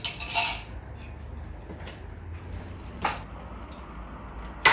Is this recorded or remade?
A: recorded